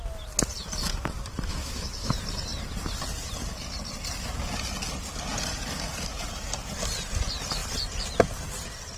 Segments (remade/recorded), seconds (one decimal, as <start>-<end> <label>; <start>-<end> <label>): 0.0-1.5 recorded; 1.5-2.1 remade; 2.1-9.0 recorded